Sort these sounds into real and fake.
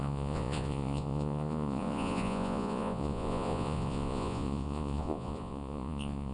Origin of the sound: fake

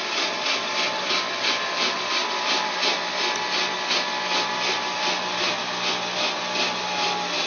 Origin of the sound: real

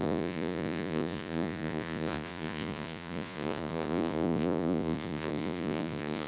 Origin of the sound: fake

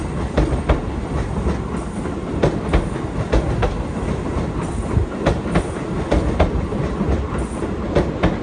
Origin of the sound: real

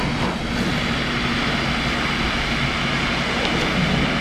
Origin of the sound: real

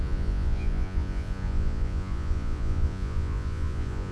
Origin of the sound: fake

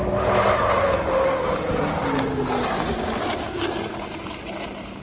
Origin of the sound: real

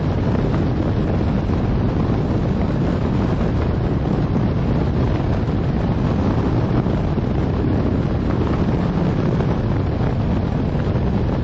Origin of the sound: real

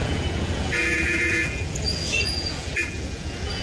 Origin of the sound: fake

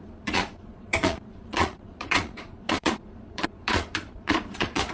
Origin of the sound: fake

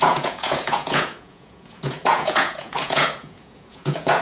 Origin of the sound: fake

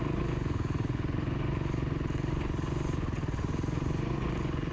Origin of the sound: fake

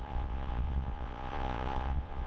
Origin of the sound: fake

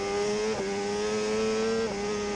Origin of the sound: real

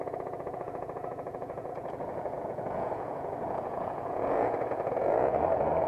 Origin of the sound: fake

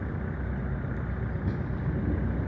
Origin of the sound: real